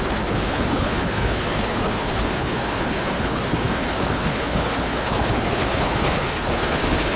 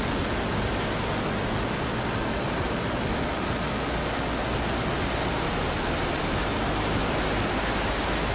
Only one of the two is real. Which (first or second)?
second